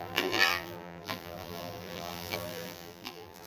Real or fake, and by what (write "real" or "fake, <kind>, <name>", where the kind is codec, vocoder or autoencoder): fake, vocoder, BigVGAN v2